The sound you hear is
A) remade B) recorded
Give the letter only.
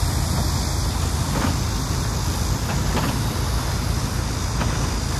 B